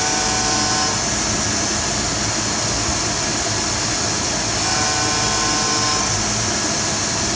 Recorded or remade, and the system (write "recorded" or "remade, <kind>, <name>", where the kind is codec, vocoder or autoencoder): recorded